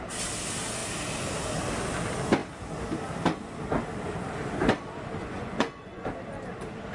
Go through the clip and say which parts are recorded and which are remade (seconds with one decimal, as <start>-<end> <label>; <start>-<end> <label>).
0.0-5.2 recorded; 5.2-6.1 remade; 6.1-6.9 recorded